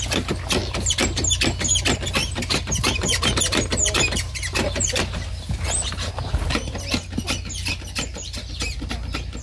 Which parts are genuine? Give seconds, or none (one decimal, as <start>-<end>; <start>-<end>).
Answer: 0.0-2.2; 6.1-8.1; 8.8-9.4